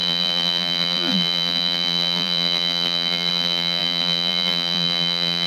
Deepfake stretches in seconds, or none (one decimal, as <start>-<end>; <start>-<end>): 0.0-5.5